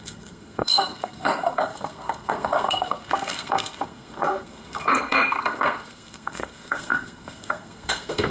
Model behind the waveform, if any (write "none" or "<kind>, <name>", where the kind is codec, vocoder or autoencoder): codec, SNAC